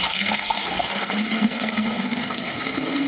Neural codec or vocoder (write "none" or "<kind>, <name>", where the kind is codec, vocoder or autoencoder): codec, SNAC